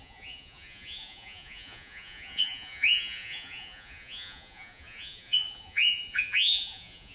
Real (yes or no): no